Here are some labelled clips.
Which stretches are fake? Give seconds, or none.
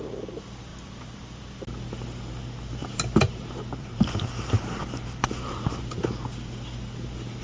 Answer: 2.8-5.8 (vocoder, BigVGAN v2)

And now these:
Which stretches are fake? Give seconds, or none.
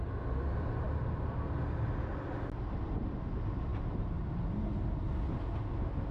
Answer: none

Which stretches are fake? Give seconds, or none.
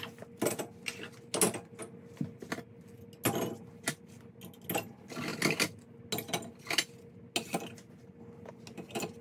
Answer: none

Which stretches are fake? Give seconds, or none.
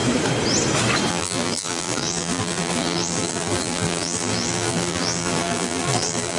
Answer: 1.1-6.4 (vocoder, BigVGAN v2)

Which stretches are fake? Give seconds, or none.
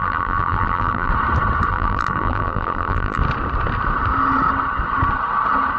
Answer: 0.0-1.1 (vocoder, BigVGAN v2); 1.7-3.2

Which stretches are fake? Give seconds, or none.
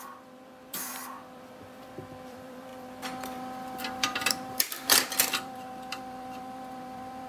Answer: 0.0-7.3 (vocoder, BigVGAN v2)